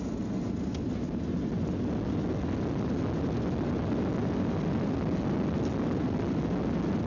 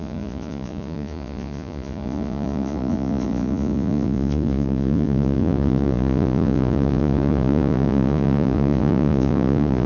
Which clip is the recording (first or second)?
first